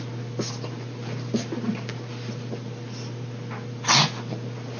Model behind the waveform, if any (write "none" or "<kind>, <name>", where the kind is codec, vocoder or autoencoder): none